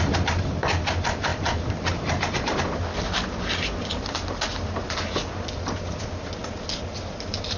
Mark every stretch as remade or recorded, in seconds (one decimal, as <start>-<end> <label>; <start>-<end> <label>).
0.0-7.6 recorded